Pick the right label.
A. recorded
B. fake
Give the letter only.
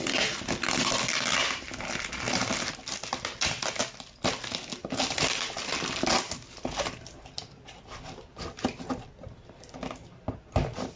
A